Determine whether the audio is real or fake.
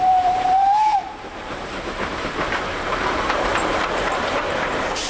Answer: fake